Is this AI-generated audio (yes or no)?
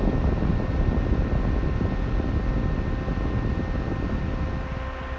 no